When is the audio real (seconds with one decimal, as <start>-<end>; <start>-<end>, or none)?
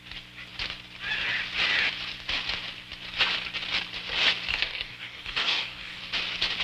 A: 0.0-4.5; 6.0-6.6